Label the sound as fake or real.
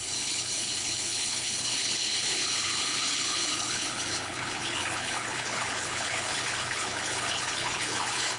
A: fake